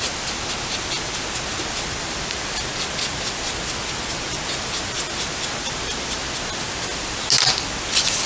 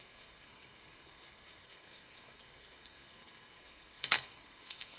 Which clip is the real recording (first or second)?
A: first